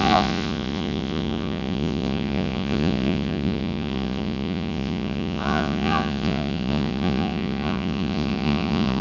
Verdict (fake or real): fake